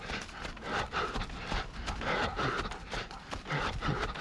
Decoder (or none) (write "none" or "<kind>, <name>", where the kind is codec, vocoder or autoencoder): none